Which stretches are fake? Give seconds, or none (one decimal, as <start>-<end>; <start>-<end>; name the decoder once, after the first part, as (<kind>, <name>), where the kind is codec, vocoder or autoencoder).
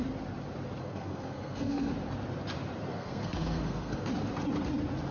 0.8-1.9 (codec, SNAC); 2.9-4.1